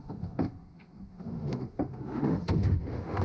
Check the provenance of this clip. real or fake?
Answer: fake